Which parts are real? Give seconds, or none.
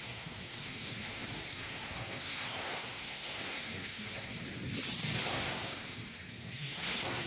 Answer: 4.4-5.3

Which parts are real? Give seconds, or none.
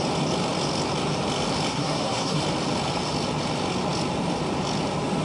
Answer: 0.0-1.7; 2.4-5.2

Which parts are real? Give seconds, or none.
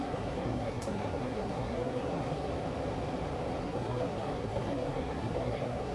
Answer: 2.5-3.6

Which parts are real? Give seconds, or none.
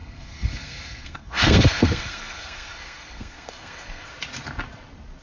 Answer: 4.1-5.2